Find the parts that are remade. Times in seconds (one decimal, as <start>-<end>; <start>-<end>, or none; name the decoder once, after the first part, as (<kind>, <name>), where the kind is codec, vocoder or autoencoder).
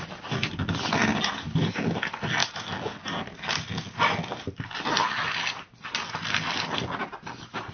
none